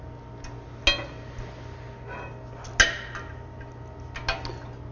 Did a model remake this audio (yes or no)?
no